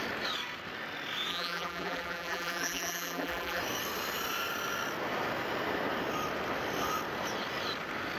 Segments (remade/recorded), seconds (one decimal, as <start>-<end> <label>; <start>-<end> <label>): 0.0-1.3 recorded; 1.3-3.6 remade; 3.6-8.2 recorded